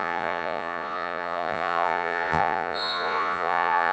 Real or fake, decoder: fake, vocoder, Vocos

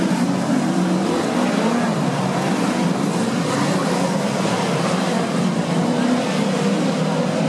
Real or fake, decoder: real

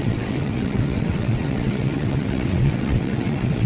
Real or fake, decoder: fake, vocoder, WaveNeXt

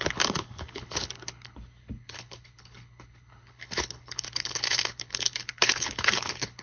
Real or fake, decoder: fake, codec, HILCodec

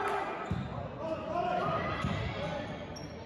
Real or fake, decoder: fake, vocoder, BigVGAN v2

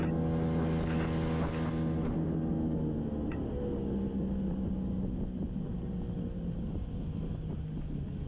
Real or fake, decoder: real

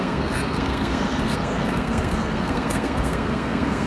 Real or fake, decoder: fake, codec, SNAC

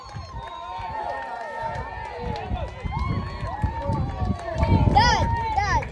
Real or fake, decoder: real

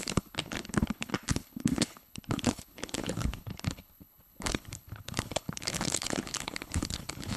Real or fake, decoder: fake, codec, HILCodec